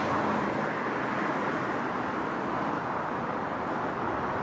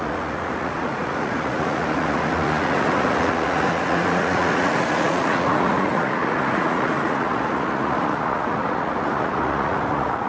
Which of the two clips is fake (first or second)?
second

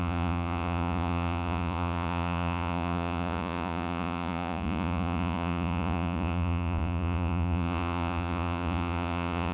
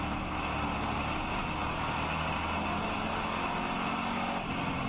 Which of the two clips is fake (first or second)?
first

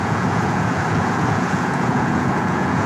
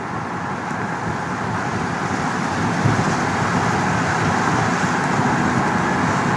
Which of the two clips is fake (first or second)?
first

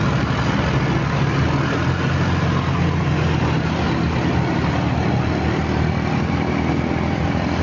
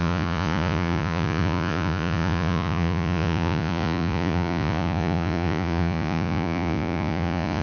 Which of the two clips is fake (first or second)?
second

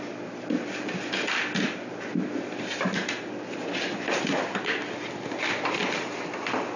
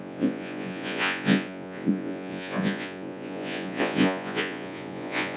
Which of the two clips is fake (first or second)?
second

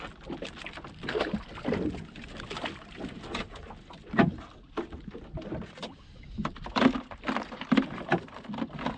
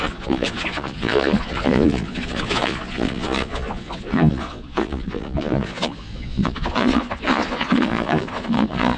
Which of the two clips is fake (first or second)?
second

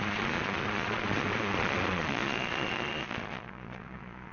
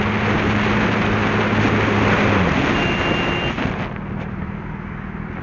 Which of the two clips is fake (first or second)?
first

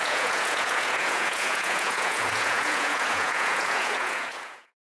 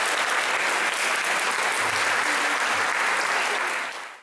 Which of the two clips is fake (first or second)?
first